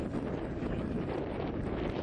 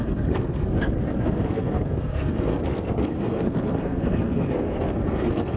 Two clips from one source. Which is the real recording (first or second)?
first